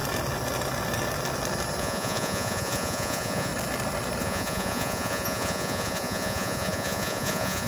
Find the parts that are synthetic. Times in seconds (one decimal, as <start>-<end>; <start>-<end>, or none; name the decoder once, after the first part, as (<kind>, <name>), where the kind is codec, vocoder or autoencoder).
1.8-3.5 (vocoder, Vocos); 4.2-7.7